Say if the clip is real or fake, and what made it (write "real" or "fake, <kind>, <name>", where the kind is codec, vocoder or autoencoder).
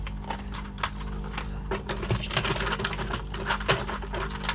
real